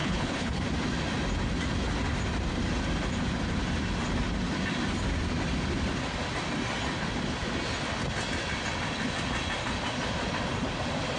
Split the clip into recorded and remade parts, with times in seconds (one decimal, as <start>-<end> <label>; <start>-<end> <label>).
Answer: 0.0-0.6 remade; 0.6-11.2 recorded